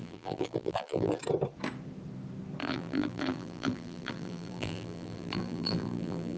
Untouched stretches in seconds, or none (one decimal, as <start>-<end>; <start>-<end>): 1.2-2.6